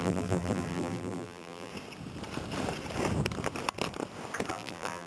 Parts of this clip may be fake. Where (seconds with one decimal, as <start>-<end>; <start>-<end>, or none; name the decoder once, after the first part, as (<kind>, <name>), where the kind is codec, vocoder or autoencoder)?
0.0-1.7 (vocoder, BigVGAN v2); 4.5-5.1